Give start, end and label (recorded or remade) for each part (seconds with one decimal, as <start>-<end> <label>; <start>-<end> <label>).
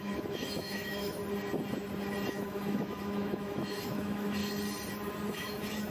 0.0-1.2 remade; 1.2-2.3 recorded; 2.3-4.4 remade; 4.4-5.3 recorded; 5.3-5.9 remade